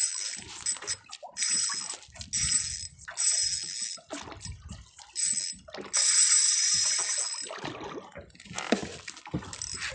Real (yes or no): yes